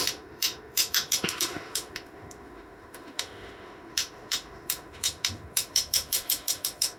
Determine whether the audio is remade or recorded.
remade